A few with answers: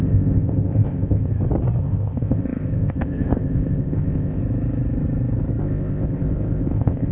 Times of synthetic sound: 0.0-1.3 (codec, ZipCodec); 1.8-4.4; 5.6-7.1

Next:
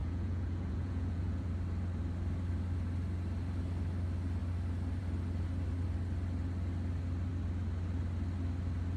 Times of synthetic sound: 0.0-1.5 (vocoder, Vocos)